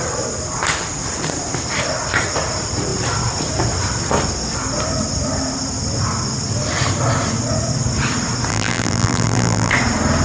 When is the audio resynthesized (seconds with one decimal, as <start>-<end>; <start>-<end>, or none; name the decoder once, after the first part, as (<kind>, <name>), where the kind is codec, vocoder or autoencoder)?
8.5-9.7 (vocoder, BigVGAN v2)